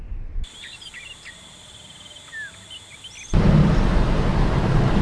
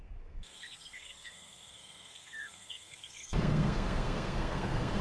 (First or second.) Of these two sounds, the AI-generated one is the second